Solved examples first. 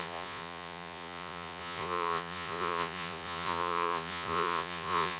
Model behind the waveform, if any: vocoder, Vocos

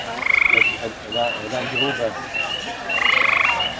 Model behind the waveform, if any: vocoder, BigVGAN v2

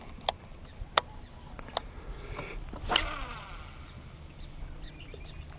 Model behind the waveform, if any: none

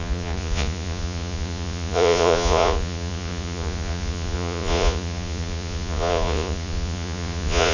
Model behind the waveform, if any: vocoder, Vocos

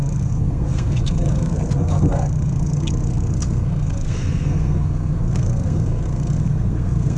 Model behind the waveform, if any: codec, SNAC